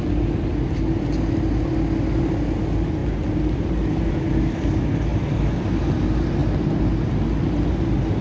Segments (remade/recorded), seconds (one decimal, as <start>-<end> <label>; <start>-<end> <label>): 0.0-8.2 recorded